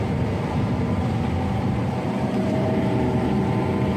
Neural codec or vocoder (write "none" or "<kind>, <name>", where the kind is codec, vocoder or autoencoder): vocoder, BigVGAN v2